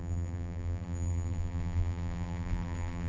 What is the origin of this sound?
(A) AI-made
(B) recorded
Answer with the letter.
A